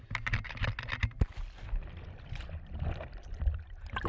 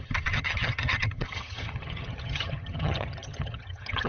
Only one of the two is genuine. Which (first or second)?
first